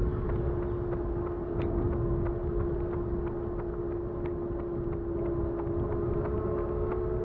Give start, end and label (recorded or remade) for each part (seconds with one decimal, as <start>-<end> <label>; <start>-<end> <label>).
0.0-7.2 recorded